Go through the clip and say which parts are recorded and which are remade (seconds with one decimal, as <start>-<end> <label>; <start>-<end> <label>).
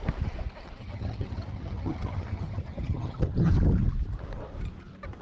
0.0-0.8 recorded; 0.8-3.5 remade; 3.5-5.2 recorded